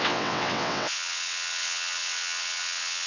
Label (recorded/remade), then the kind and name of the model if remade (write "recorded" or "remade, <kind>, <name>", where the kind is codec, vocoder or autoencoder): remade, vocoder, WaveNeXt